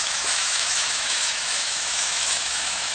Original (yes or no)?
no